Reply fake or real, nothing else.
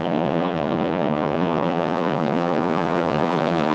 fake